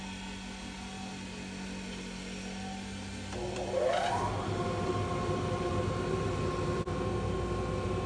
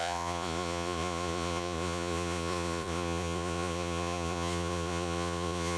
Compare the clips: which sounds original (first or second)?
first